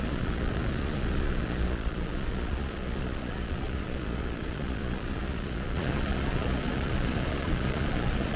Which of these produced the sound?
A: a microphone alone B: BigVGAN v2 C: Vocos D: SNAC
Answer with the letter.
C